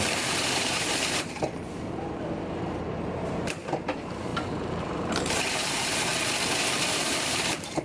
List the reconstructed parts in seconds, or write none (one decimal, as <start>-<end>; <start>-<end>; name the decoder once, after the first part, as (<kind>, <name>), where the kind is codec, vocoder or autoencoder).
0.0-6.1 (vocoder, BigVGAN v2); 6.9-7.8